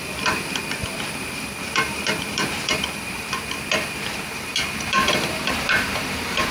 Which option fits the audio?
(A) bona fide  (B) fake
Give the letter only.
B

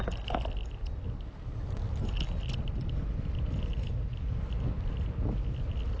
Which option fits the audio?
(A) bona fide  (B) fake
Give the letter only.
A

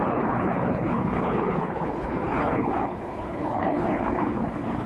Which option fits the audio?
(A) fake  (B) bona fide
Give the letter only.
A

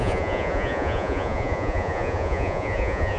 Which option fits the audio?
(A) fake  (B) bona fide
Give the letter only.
A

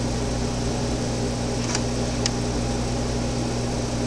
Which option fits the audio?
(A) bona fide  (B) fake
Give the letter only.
A